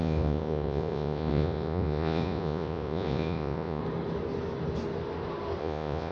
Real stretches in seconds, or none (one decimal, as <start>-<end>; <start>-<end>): 3.8-5.6